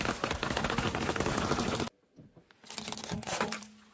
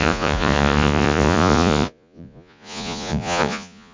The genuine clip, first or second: first